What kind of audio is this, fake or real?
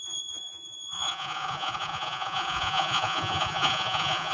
fake